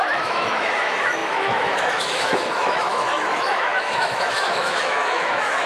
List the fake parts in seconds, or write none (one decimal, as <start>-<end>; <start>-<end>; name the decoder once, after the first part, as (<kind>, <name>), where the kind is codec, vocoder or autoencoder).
0.0-5.7 (autoencoder, DAC-VAE)